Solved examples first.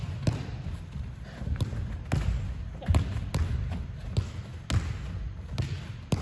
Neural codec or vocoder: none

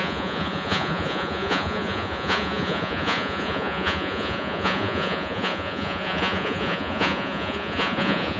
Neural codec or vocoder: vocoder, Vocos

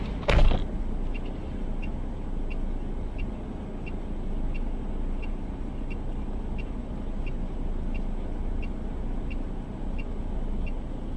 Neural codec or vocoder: none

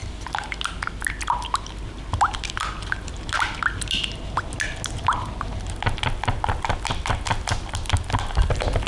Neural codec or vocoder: none